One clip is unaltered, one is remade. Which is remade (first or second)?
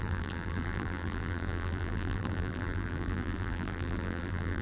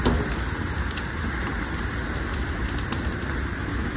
first